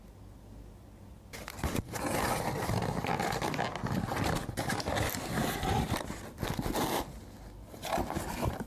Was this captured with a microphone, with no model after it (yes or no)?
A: yes